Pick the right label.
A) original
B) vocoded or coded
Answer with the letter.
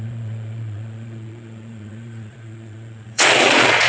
B